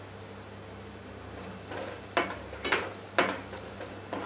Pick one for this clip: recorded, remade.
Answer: recorded